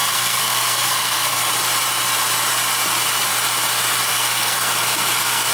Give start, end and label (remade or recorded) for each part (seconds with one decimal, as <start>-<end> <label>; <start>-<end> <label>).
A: 0.0-1.5 remade; 1.5-4.1 recorded; 4.1-5.5 remade